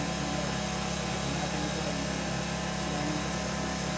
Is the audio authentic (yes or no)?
yes